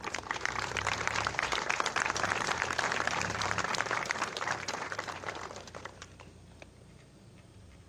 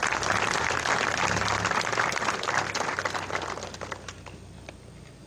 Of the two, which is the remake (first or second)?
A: first